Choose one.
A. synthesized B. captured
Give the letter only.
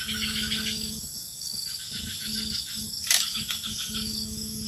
A